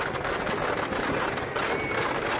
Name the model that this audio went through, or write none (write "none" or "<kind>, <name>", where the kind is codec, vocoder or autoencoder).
none